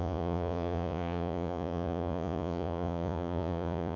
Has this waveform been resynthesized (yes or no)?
yes